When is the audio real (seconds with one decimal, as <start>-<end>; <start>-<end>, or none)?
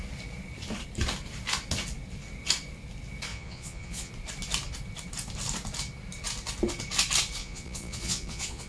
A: 0.0-3.3; 4.1-7.4